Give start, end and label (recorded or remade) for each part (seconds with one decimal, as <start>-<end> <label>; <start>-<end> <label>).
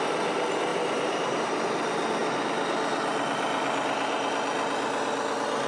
0.0-0.7 recorded; 0.7-1.5 remade; 1.5-5.7 recorded